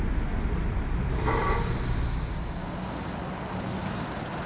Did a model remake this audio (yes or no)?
no